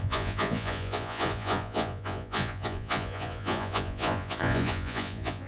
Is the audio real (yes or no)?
no